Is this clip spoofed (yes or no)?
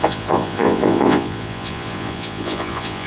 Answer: yes